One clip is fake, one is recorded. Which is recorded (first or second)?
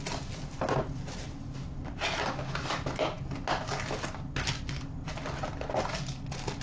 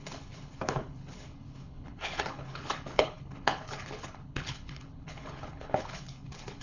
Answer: first